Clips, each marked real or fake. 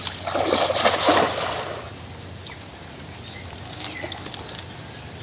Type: real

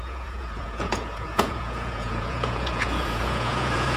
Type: fake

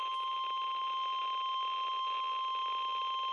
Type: real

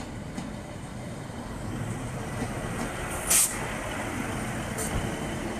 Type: real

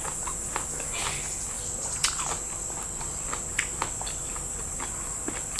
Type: real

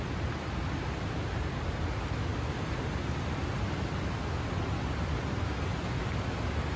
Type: real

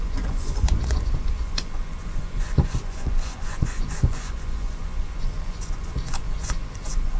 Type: fake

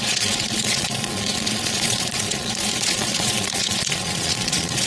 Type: fake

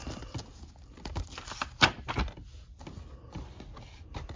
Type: real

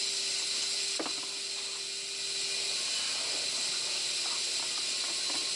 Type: real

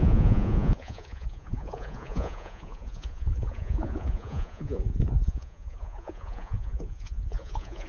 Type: fake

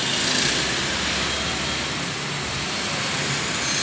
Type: real